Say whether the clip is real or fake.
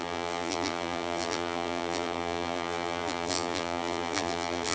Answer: fake